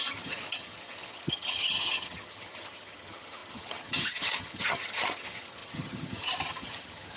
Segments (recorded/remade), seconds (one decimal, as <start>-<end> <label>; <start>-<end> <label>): 0.0-7.2 remade